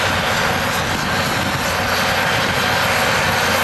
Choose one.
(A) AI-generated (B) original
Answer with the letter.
B